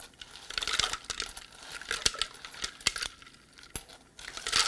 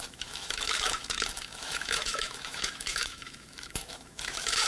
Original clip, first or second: first